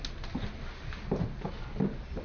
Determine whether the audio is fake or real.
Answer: real